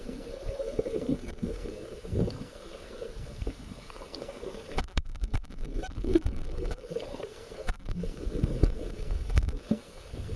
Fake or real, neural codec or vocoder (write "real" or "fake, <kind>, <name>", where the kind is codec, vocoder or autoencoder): fake, codec, SNAC